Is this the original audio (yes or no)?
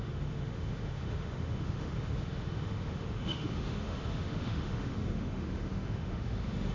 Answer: no